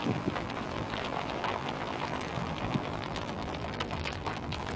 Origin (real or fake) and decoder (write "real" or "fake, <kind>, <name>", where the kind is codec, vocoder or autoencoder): fake, vocoder, BigVGAN v2